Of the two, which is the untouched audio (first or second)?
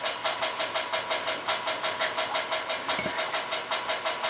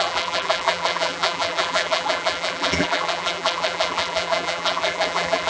first